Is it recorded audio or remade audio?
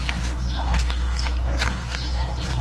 remade